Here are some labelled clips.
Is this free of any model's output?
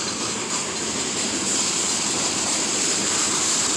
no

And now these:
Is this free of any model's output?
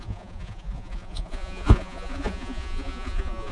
no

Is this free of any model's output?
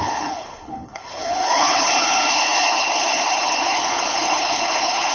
no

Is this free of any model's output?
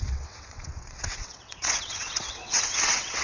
no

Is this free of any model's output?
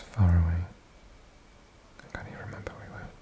yes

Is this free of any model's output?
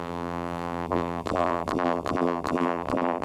no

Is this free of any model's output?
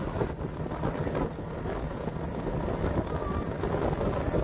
yes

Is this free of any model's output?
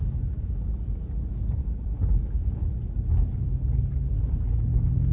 yes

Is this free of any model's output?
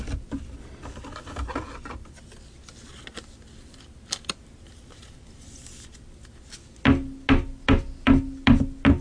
yes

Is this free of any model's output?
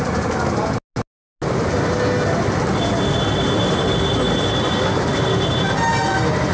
yes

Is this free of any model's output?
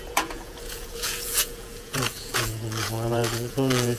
no